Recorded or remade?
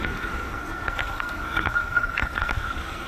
remade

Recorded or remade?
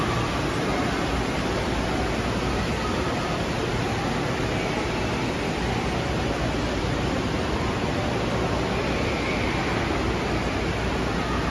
recorded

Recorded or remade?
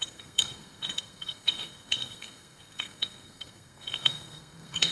remade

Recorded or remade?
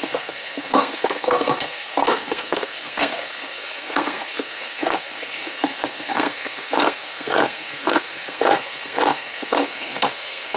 remade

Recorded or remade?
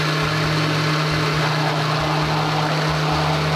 recorded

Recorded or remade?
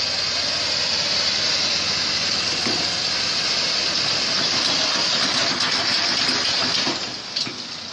recorded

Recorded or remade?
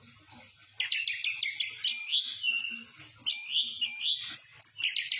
recorded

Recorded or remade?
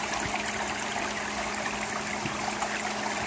recorded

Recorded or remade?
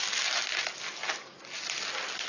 recorded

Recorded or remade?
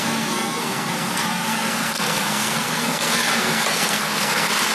remade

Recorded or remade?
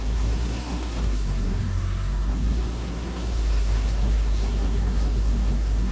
remade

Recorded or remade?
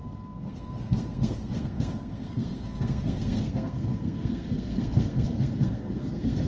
remade